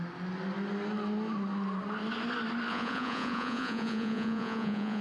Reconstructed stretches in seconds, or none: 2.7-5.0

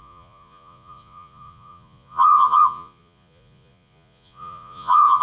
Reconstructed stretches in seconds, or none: 0.0-5.2

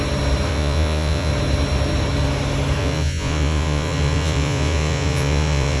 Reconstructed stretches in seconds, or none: 0.5-1.3; 2.8-5.8

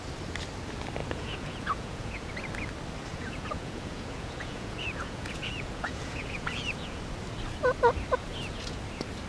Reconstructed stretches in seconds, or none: 1.0-2.3; 3.1-7.0; 8.3-8.8

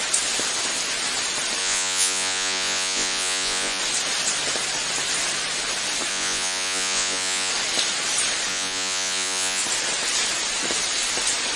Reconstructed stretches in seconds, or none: 1.6-3.8; 6.1-7.5; 8.5-9.6

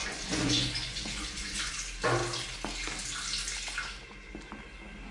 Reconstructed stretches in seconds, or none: 0.0-1.7

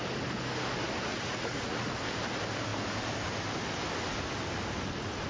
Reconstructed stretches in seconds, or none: 1.1-2.0

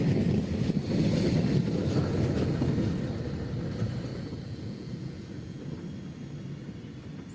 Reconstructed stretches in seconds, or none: 4.1-5.6